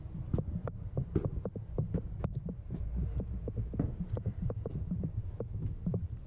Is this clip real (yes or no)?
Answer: no